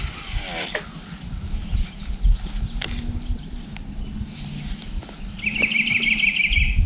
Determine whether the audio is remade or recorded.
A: recorded